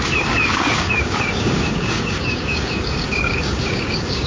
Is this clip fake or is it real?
fake